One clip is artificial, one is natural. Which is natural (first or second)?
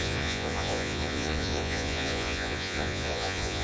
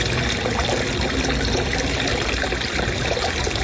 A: second